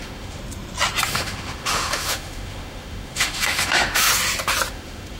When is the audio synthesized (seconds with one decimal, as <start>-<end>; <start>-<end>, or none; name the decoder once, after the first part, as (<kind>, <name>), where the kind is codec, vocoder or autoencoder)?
0.0-0.4 (autoencoder, DAC-VAE); 1.1-4.1; 4.7-5.2